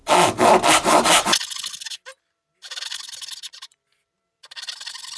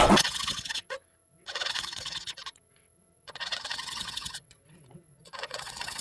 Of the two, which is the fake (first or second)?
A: second